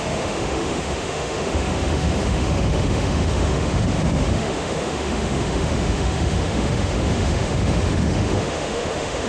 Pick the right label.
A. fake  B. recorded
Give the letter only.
A